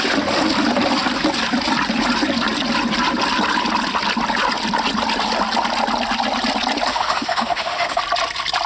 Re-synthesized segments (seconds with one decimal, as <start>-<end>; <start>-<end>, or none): 6.9-8.0